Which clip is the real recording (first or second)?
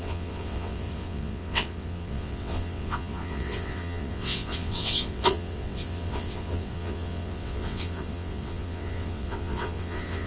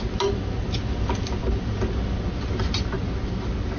second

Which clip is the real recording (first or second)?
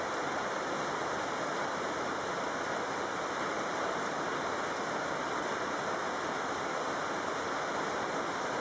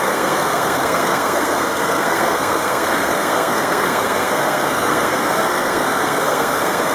first